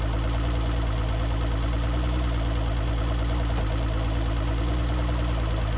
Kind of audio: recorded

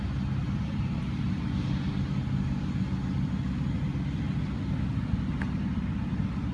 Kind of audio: recorded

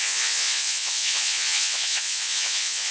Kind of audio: remade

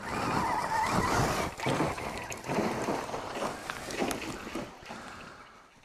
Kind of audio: recorded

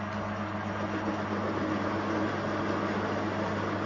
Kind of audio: recorded